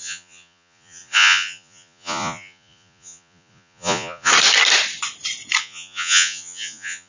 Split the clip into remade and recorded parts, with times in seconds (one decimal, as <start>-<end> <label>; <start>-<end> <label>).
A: 0.0-4.3 remade; 4.3-5.6 recorded; 5.6-7.1 remade